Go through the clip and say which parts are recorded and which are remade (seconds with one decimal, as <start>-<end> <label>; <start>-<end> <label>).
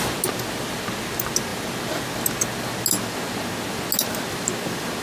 0.0-5.0 recorded